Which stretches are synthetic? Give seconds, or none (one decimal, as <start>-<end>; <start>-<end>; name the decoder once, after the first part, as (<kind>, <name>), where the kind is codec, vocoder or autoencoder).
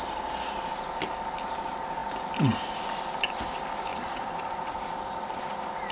3.9-5.4 (vocoder, BigVGAN v2)